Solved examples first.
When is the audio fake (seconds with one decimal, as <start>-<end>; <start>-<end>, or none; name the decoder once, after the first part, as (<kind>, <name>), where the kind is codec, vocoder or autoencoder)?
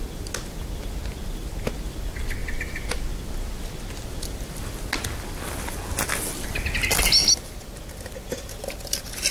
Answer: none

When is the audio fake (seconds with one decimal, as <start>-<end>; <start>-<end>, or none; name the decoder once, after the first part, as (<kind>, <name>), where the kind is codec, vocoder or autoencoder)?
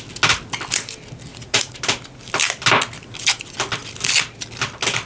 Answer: 1.3-1.8 (vocoder, Vocos)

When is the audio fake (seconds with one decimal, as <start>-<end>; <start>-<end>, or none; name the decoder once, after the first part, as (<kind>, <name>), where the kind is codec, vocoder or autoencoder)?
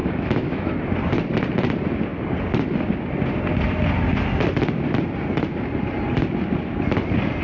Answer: 0.0-0.8 (autoencoder, DAC-VAE)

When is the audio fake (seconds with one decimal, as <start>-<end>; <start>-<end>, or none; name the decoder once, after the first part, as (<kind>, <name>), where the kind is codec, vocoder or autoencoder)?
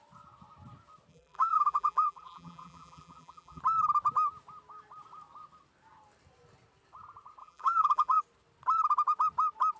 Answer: 1.1-3.6 (vocoder, BigVGAN v2); 7.4-8.2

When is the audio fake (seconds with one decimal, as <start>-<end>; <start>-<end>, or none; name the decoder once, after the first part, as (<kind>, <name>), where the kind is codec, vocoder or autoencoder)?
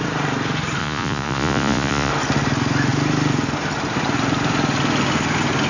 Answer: 0.8-2.1 (vocoder, Vocos)